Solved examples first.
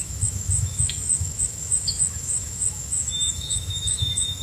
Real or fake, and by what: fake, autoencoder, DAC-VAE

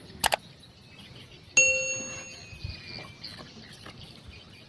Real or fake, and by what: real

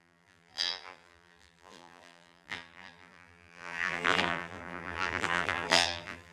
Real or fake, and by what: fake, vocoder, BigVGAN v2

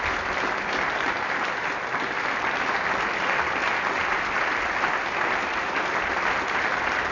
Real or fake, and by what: real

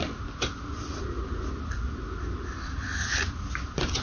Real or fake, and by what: real